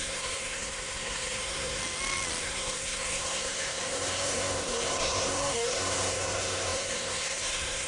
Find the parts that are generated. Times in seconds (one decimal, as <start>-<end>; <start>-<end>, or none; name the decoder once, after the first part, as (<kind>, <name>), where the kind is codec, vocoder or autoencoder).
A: 0.0-1.8 (codec, SNAC); 2.4-7.9